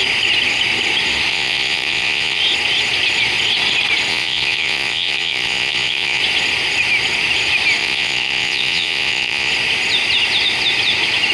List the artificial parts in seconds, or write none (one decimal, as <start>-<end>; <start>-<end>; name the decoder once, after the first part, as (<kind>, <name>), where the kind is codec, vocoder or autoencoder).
1.3-2.4 (vocoder, Vocos); 4.1-6.2; 7.8-9.5